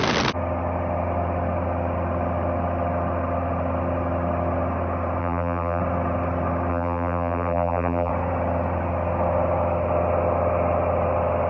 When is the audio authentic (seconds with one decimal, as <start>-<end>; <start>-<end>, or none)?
0.0-5.2; 5.8-6.7; 8.1-11.5